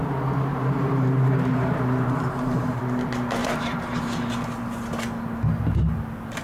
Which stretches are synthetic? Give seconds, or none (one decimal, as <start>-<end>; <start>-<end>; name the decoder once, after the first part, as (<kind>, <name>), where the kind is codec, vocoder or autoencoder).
0.5-2.8 (vocoder, BigVGAN v2); 3.4-4.0